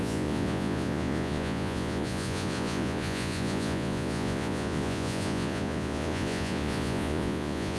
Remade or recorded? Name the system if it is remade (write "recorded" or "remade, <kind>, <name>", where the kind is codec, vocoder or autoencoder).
remade, vocoder, Vocos